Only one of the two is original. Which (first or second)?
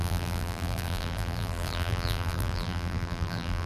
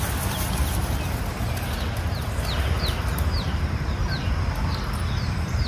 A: second